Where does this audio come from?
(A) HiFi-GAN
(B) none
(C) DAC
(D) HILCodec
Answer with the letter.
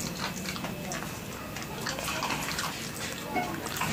B